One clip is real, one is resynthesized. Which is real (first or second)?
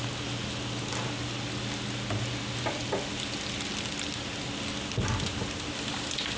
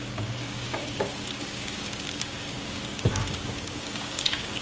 first